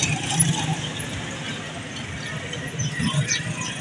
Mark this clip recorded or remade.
recorded